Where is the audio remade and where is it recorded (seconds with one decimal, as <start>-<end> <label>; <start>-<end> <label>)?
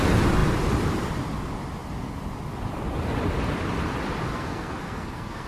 0.0-4.3 recorded; 4.3-5.5 remade